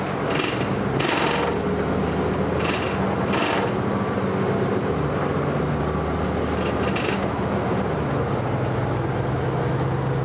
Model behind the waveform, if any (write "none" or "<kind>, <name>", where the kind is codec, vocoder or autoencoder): none